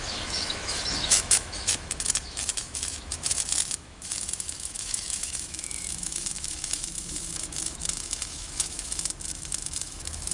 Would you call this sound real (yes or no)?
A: no